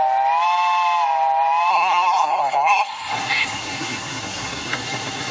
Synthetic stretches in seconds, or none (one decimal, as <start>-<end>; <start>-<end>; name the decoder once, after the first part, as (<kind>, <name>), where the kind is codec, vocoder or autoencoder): 1.7-5.3 (codec, SNAC)